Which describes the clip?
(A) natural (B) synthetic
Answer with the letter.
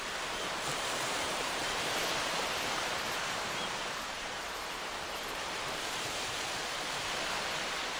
B